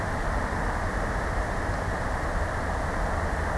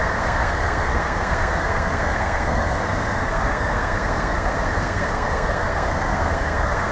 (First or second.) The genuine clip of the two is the first